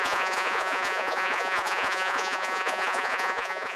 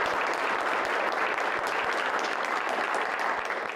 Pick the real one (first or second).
second